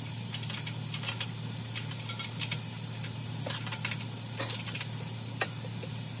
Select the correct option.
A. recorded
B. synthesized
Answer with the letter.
A